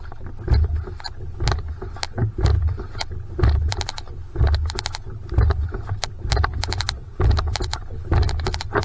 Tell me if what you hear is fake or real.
real